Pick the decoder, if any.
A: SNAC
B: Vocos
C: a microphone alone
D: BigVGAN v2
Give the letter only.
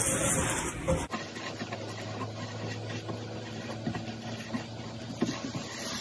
C